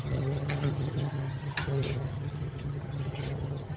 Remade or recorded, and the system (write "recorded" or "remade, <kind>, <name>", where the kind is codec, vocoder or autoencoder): remade, vocoder, HiFi-GAN